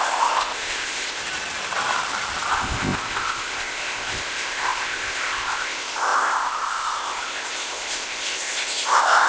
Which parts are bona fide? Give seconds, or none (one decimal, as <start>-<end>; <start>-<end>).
1.2-2.5